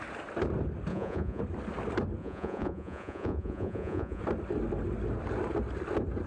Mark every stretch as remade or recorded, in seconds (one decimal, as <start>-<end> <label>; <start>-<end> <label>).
0.0-0.9 recorded; 0.9-1.4 remade; 1.4-2.2 recorded; 2.2-4.2 remade; 4.2-6.3 recorded